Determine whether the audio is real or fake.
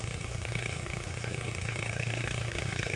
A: fake